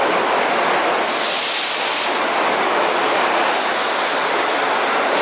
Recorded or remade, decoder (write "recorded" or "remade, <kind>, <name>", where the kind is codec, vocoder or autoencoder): recorded